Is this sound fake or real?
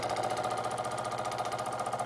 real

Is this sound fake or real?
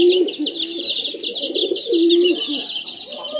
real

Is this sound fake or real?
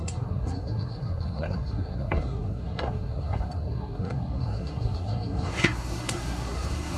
fake